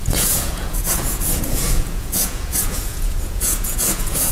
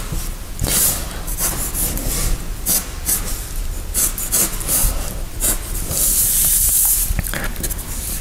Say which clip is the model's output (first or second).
first